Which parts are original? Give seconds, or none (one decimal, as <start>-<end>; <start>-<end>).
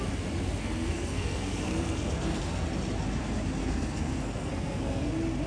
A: 0.0-0.6; 2.4-3.6; 5.1-5.5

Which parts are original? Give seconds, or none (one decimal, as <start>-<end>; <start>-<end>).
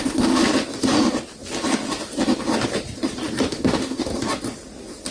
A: 0.4-3.5; 4.1-5.1